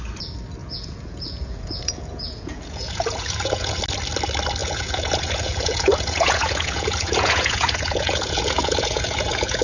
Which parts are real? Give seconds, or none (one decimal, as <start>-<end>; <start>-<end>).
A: 0.0-0.6; 3.8-4.6